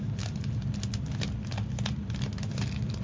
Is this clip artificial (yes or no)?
no